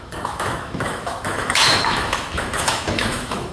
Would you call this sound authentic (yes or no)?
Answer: no